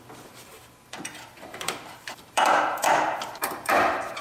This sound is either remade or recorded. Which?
remade